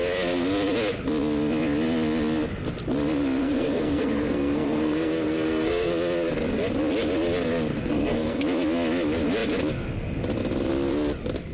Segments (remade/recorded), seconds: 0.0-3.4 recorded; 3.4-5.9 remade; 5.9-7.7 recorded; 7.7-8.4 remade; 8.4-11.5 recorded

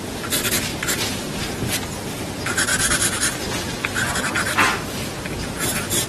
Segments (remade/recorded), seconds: 0.0-6.1 recorded

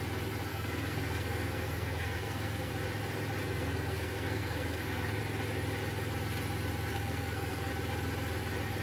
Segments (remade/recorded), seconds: 0.0-0.5 recorded; 0.5-2.7 remade; 2.7-3.4 recorded; 3.4-5.2 remade; 5.2-6.9 recorded; 6.9-7.7 remade; 7.7-8.8 recorded

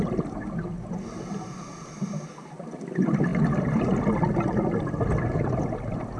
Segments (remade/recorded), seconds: 0.0-6.2 recorded

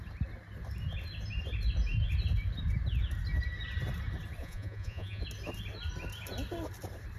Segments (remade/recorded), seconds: 0.0-4.4 recorded; 4.4-5.2 remade; 5.2-7.2 recorded

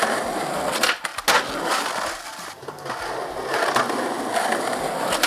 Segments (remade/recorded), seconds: 0.0-5.3 recorded

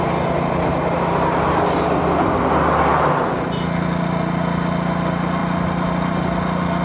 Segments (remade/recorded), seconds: 0.0-6.8 recorded

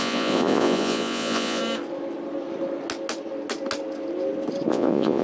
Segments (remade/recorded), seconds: 0.0-1.6 remade; 1.6-4.7 recorded; 4.7-5.2 remade